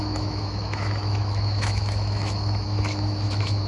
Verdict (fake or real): fake